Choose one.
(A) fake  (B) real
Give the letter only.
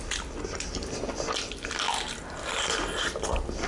B